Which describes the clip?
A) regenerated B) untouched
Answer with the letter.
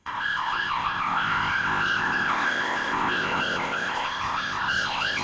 A